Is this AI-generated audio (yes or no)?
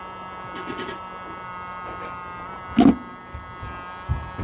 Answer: no